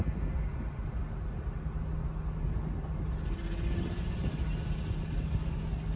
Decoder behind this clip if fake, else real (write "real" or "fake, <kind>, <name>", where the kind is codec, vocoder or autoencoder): real